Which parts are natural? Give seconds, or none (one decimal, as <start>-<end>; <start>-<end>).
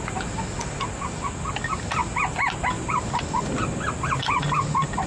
0.0-5.1